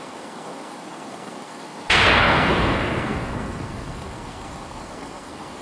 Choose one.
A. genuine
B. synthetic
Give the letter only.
B